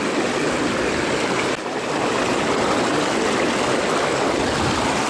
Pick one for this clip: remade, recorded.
recorded